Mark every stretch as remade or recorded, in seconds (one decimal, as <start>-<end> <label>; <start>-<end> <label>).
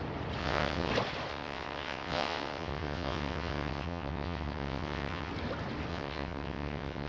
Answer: 0.0-0.4 recorded; 0.4-0.9 remade; 0.9-1.3 recorded; 1.3-5.3 remade; 5.3-5.9 recorded; 5.9-7.1 remade